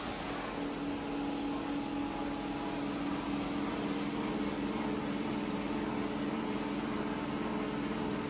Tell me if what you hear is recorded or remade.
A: recorded